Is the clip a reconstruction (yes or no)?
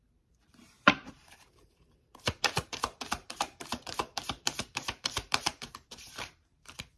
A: yes